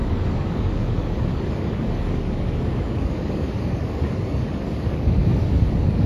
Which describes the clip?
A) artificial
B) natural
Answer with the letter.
A